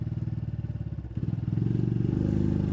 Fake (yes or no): no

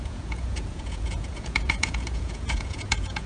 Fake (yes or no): yes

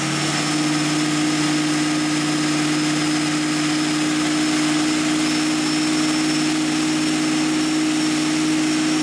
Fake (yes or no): no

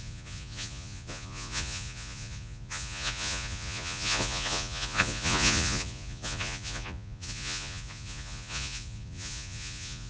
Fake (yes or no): yes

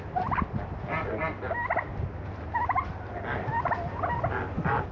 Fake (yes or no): no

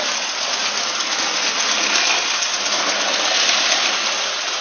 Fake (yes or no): no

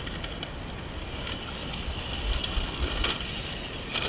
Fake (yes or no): no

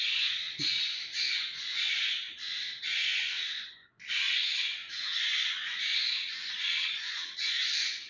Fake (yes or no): yes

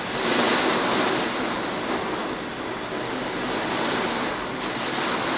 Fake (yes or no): no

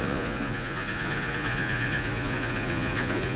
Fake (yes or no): yes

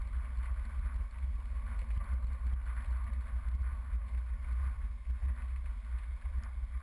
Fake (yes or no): no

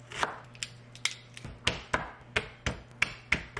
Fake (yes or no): no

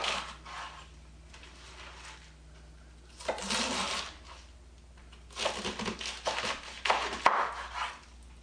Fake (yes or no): no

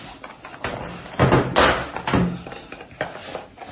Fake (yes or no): no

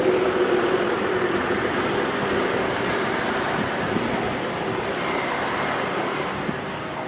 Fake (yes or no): no